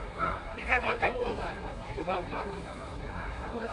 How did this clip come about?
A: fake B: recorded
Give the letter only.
A